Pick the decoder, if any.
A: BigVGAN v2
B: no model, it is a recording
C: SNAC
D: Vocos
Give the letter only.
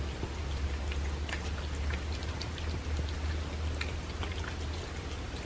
B